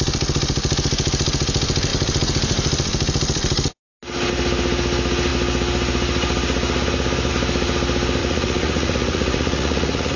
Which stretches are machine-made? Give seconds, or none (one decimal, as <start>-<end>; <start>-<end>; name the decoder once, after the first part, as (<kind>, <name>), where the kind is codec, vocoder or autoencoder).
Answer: 8.2-10.2 (vocoder, Vocos)